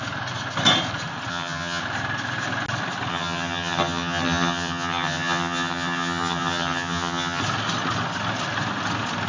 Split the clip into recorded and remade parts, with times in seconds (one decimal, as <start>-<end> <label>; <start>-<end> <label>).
0.0-1.3 recorded; 1.3-1.8 remade; 1.8-3.1 recorded; 3.1-7.4 remade; 7.4-9.3 recorded